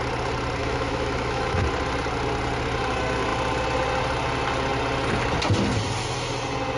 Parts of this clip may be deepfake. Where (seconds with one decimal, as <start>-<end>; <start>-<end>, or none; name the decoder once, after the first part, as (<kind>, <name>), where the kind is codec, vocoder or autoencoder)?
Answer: 0.6-1.6 (autoencoder, DAC-VAE)